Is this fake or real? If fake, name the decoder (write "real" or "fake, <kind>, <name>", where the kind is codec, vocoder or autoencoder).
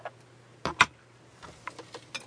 real